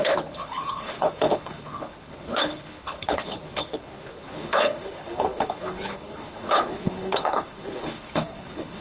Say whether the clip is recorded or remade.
remade